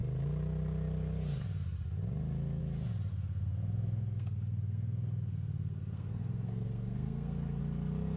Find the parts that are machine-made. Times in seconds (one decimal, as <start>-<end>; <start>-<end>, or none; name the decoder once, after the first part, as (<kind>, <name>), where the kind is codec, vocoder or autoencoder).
3.1-7.6 (codec, SNAC)